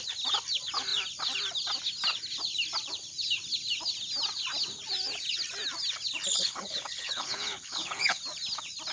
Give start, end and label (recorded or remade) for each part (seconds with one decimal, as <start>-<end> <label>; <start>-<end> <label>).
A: 0.0-6.3 recorded; 6.3-8.2 remade; 8.2-8.9 recorded